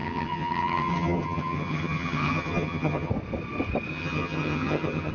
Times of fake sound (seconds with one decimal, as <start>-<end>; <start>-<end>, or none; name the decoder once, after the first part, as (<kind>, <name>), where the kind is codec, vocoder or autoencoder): 0.0-3.1 (vocoder, HiFi-GAN); 3.9-5.1